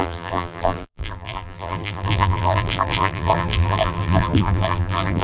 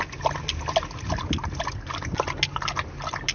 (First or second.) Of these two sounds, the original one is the second